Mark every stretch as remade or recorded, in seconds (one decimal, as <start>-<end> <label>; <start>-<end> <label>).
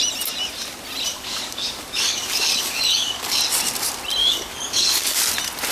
0.0-1.1 recorded; 1.1-3.4 remade; 3.4-4.2 recorded; 4.2-5.2 remade; 5.2-5.7 recorded